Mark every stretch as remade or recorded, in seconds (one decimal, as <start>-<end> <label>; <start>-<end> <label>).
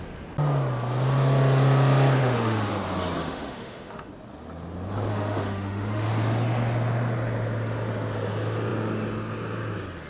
0.0-2.2 recorded; 2.2-2.7 remade; 2.7-3.2 recorded; 3.2-4.1 remade; 4.1-5.1 recorded; 5.1-6.1 remade; 6.1-10.1 recorded